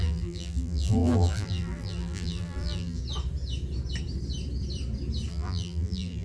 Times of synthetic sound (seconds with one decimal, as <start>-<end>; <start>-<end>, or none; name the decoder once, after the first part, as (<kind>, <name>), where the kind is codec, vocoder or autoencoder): 0.0-3.0 (vocoder, BigVGAN v2); 5.3-6.2